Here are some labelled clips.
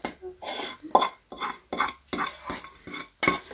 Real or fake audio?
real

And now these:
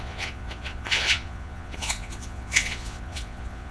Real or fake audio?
fake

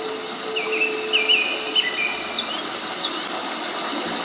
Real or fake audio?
real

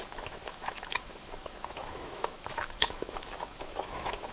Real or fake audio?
fake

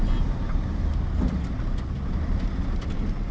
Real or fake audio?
real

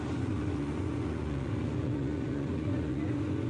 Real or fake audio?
fake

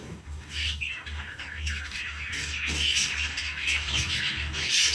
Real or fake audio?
fake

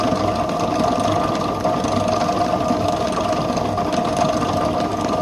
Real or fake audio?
real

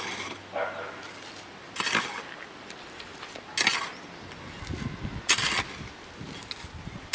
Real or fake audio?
real